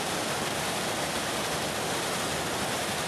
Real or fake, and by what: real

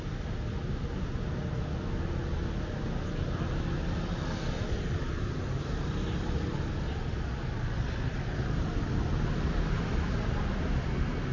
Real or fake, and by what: real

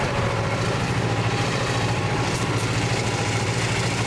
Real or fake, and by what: fake, vocoder, BigVGAN v2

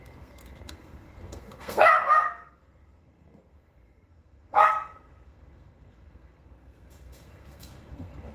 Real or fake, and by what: fake, codec, SNAC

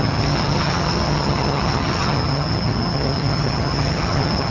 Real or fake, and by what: fake, vocoder, HiFi-GAN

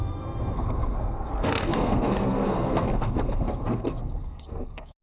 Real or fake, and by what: fake, codec, SNAC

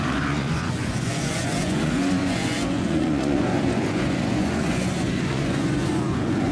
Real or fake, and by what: fake, vocoder, Vocos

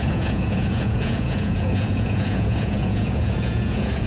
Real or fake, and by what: fake, vocoder, Vocos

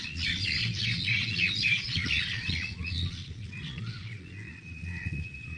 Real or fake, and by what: fake, vocoder, Vocos